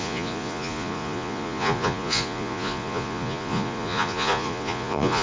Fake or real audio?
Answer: fake